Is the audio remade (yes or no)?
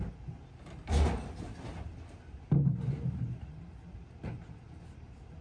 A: no